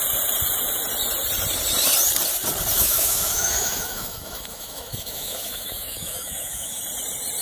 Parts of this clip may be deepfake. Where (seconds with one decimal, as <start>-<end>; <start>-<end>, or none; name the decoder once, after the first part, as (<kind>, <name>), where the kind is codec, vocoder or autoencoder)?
2.8-6.8 (autoencoder, DAC-VAE)